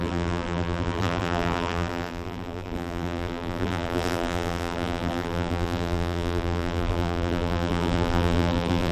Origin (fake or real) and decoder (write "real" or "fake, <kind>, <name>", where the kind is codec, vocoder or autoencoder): fake, vocoder, BigVGAN v2